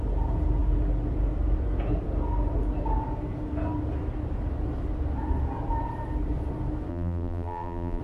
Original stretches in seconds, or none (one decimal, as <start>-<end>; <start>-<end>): 0.0-6.9